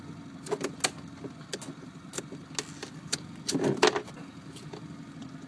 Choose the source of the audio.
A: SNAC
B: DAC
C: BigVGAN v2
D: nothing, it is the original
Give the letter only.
D